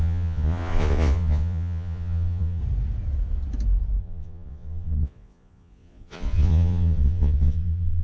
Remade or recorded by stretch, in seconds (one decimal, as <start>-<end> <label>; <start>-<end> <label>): 0.0-2.6 remade; 2.6-4.0 recorded; 4.0-8.0 remade